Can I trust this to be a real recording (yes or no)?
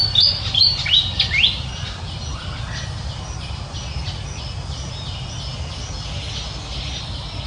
yes